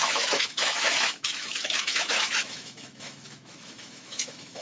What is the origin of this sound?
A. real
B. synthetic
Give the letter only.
B